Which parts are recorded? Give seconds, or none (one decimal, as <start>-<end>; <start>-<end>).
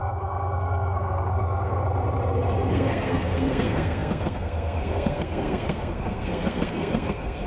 1.8-2.7